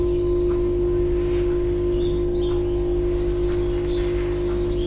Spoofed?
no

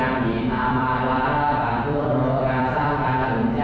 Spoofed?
yes